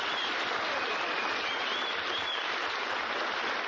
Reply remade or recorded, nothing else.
recorded